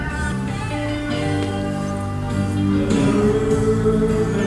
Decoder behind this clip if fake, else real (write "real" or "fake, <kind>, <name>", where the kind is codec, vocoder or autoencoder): real